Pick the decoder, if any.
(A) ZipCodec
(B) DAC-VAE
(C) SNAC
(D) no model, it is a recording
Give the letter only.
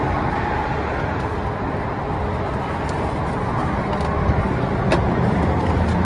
D